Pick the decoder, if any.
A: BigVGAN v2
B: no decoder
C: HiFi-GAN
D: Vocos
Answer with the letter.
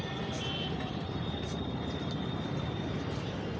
A